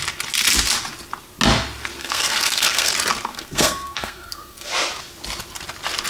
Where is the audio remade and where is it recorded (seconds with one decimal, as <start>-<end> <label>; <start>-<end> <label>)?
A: 0.0-2.0 recorded; 2.0-2.9 remade; 2.9-3.3 recorded; 3.3-4.7 remade; 4.7-6.1 recorded